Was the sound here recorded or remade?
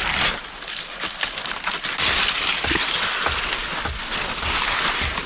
recorded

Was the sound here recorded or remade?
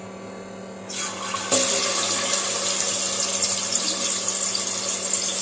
recorded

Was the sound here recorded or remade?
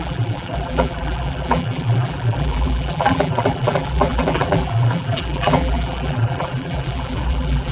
remade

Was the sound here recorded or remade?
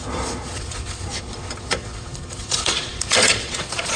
remade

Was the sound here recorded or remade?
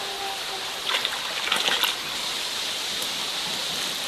recorded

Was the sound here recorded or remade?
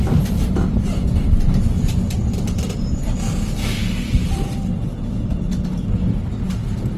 remade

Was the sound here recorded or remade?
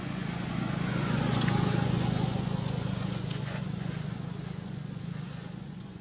remade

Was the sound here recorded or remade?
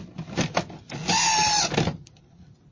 recorded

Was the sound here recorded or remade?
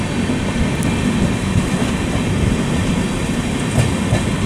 recorded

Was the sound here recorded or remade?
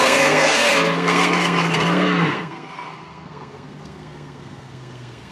remade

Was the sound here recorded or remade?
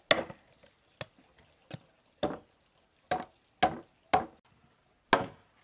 recorded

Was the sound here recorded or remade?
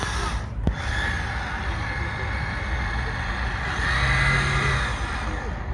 recorded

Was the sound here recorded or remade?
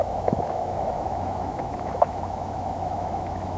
remade